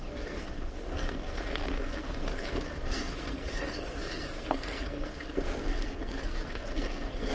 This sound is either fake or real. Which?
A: fake